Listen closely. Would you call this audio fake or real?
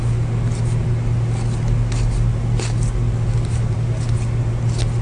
real